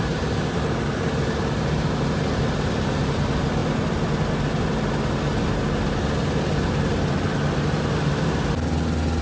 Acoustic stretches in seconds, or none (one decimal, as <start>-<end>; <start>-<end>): 0.0-9.2